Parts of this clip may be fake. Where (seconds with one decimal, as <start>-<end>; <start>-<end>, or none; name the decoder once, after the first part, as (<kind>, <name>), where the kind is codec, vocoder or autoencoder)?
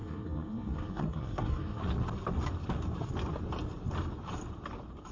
0.0-1.8 (codec, SNAC)